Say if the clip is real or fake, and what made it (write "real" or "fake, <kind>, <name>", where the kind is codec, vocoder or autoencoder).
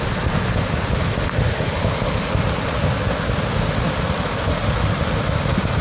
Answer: real